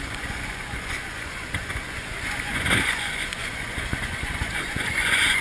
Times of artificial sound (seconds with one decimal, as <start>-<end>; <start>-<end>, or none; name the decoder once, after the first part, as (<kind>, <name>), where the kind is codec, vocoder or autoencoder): 0.0-5.4 (vocoder, Vocos)